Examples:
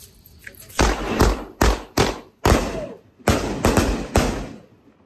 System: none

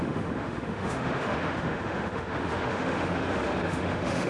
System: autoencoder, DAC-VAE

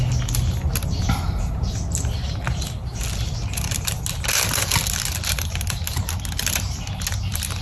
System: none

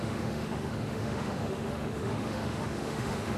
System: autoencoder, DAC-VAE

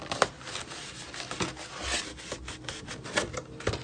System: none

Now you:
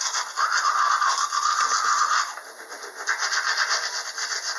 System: none